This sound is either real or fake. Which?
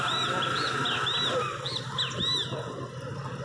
real